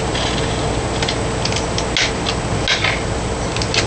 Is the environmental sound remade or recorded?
recorded